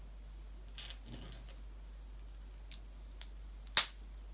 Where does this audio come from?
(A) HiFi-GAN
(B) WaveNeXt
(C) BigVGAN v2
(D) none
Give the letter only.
D